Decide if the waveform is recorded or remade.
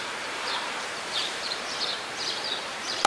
remade